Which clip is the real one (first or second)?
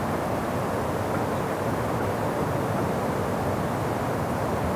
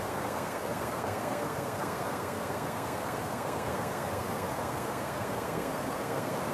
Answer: first